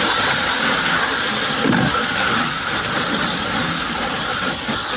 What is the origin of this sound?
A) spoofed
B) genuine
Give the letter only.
B